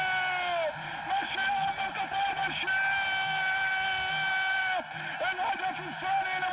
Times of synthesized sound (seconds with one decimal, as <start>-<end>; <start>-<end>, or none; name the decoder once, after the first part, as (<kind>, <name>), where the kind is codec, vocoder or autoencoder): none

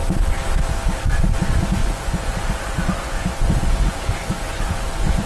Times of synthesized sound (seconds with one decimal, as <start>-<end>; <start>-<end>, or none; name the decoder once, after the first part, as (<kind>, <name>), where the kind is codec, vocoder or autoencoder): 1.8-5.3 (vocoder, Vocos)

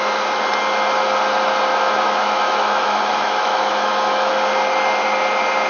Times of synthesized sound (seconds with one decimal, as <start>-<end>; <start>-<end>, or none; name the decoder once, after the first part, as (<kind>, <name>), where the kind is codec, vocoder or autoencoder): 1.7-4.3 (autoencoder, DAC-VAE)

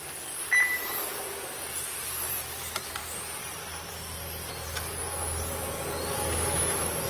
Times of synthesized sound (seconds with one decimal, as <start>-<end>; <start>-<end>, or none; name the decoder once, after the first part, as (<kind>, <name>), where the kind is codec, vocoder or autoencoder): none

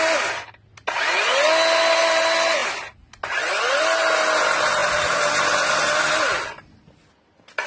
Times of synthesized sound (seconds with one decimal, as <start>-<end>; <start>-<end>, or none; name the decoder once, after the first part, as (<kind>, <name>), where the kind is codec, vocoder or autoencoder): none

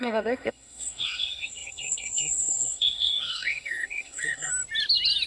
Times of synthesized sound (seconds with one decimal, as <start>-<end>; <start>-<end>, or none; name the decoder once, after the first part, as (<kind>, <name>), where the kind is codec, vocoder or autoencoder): 0.0-4.5 (codec, SNAC)

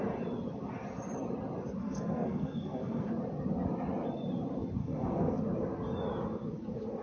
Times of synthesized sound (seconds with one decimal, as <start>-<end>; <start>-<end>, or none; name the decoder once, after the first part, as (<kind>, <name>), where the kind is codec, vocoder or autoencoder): 1.8-3.1 (codec, SNAC); 4.8-5.4